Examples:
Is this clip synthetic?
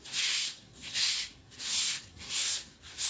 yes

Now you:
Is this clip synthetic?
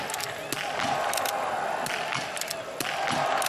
no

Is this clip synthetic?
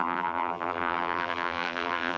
yes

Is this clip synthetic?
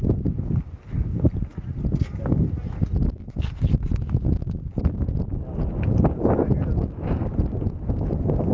no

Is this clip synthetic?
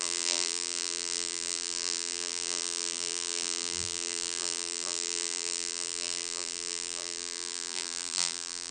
yes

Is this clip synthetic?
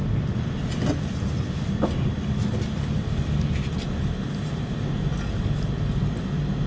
no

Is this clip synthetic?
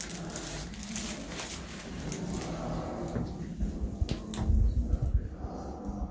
no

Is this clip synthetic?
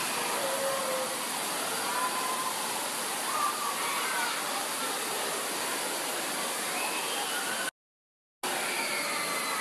no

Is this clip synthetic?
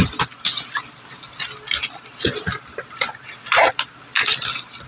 no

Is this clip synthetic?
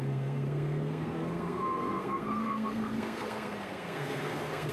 yes